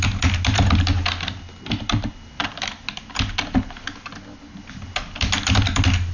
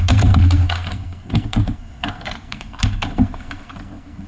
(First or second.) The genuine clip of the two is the first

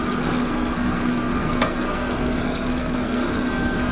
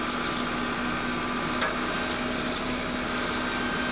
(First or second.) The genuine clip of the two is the second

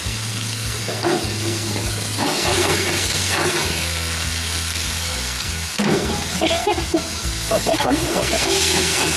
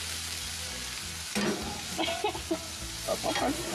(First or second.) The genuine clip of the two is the second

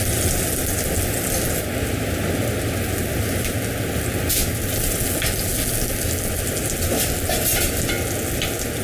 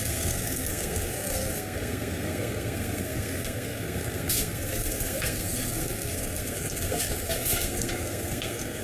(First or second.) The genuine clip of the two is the first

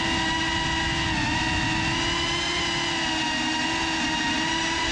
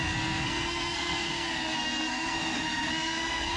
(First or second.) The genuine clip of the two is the first